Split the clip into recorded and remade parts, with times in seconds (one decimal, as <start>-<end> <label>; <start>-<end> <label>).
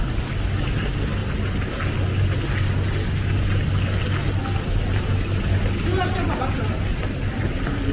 0.0-7.9 recorded